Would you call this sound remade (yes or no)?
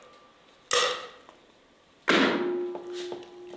no